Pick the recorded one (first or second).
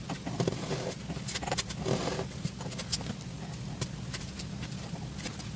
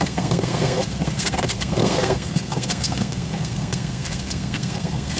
first